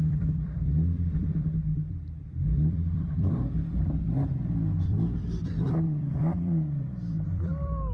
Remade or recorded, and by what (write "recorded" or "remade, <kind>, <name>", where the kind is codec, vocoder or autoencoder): remade, vocoder, BigVGAN v2